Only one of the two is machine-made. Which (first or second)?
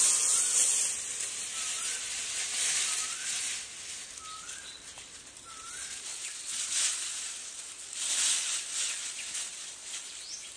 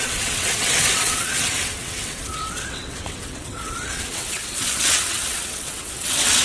second